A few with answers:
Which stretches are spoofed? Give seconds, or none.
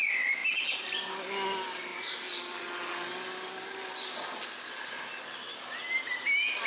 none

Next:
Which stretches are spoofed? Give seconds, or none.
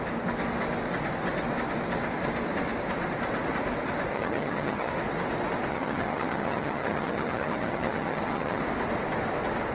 4.1-4.9; 5.7-8.6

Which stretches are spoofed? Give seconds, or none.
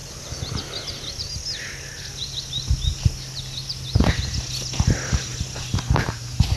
none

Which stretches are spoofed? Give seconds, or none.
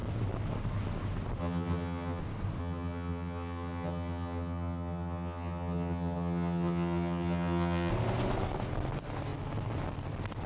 1.4-2.2; 2.6-7.9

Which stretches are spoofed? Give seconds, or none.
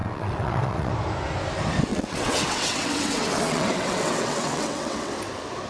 0.0-0.9; 1.9-5.1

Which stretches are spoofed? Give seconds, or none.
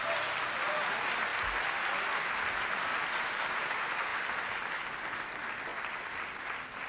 none